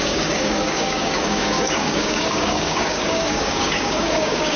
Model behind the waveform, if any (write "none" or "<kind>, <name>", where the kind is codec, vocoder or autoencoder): codec, DAC